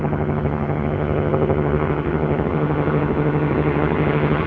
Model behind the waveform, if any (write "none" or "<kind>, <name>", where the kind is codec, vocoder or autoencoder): vocoder, HiFi-GAN